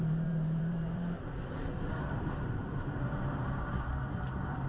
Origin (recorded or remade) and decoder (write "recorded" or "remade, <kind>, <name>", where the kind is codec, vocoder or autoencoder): remade, vocoder, BigVGAN v2